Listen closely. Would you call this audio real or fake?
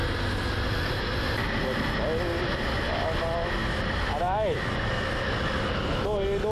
real